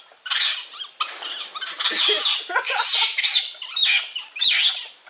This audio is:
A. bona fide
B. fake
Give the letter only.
A